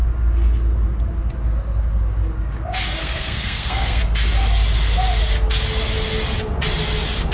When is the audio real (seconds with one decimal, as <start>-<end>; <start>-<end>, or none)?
0.0-3.0; 4.0-7.3